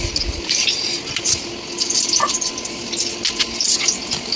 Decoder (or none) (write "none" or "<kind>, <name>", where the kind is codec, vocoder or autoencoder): none